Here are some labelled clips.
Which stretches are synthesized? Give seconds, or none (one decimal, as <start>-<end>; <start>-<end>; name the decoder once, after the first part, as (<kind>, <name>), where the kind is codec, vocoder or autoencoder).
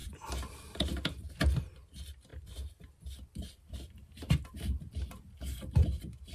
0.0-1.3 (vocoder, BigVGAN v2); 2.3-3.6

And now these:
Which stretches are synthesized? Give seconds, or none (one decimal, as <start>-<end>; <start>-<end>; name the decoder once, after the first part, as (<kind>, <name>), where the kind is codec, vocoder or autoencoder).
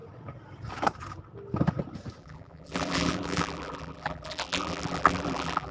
2.2-5.7 (vocoder, BigVGAN v2)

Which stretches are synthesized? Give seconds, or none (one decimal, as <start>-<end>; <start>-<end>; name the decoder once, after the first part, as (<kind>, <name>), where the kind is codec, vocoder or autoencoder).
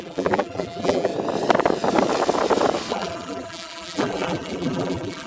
0.0-1.1 (vocoder, BigVGAN v2); 2.9-5.3